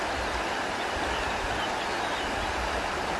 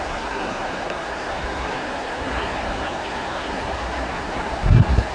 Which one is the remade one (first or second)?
second